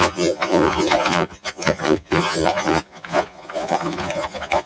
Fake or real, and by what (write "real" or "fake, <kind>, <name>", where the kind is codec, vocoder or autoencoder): fake, vocoder, Vocos